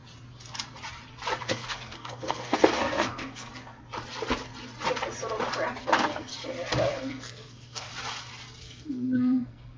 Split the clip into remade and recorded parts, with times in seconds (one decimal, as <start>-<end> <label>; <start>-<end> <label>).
0.0-1.4 recorded; 1.4-3.5 remade; 3.5-5.8 recorded; 5.8-6.3 remade; 6.3-6.9 recorded; 6.9-7.9 remade; 7.9-8.6 recorded; 8.6-9.8 remade